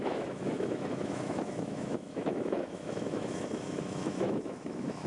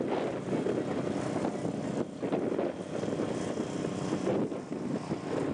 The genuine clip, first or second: second